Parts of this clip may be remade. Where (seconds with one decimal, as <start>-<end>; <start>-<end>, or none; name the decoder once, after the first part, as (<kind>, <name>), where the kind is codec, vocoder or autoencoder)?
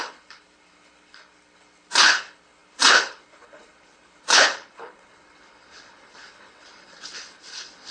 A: 0.0-7.9 (codec, HILCodec)